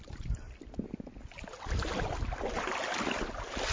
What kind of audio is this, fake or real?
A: real